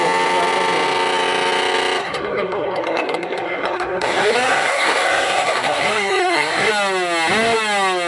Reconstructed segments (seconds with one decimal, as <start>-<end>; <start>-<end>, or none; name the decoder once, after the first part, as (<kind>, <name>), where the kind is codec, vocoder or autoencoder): 2.0-6.7 (codec, SNAC)